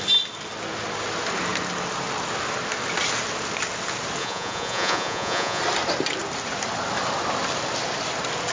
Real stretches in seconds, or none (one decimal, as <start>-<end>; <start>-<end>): 0.0-4.2; 5.6-8.5